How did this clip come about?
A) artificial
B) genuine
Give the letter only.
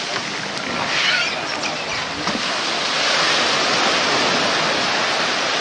B